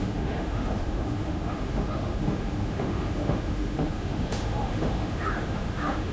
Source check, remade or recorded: remade